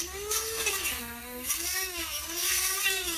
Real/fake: fake